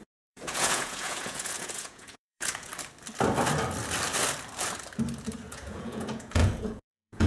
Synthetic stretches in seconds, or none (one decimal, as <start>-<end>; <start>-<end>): 0.0-2.7; 5.5-7.3